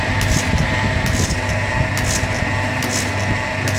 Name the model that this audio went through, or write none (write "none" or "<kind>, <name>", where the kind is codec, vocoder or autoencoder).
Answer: none